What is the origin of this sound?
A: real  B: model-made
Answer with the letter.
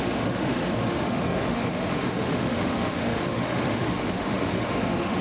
B